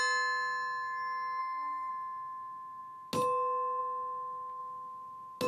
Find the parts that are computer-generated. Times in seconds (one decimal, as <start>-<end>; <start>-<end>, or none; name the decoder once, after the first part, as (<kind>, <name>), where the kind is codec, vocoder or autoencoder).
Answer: 1.4-1.9 (codec, SNAC)